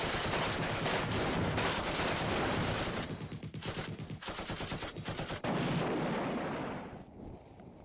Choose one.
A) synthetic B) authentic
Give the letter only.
B